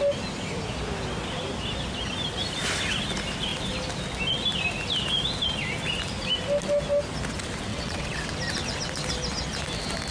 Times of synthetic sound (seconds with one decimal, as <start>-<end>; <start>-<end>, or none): 7.7-8.3

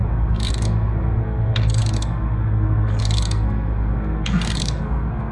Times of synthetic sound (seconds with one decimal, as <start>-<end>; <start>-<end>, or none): 0.0-5.3

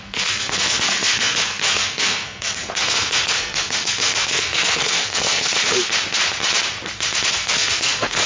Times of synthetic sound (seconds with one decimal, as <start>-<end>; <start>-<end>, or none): 0.0-5.9; 7.3-8.3

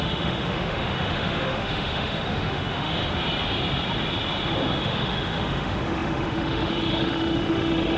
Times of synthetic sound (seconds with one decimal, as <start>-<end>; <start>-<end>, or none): 0.0-3.0; 4.8-8.0